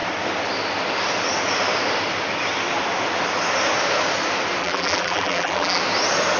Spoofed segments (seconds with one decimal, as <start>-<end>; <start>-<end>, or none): 4.6-5.8